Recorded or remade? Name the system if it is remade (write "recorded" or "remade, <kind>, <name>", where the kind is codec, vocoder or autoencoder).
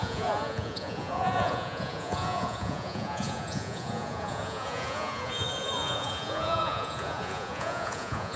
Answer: remade, vocoder, Vocos